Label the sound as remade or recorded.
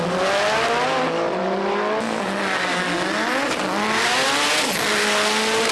recorded